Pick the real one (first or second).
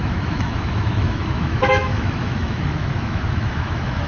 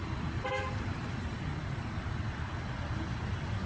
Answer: second